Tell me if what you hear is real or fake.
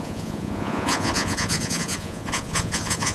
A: fake